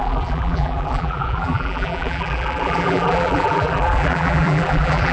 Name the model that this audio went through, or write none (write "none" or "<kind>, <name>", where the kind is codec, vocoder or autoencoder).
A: vocoder, BigVGAN v2